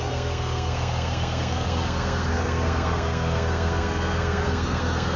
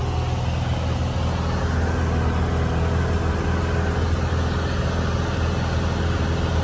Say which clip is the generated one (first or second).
first